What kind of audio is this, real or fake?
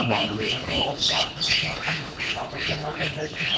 fake